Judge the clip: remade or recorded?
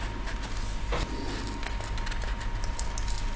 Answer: recorded